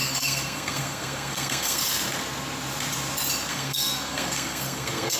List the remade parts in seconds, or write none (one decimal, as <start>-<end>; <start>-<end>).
0.0-1.8; 3.5-5.2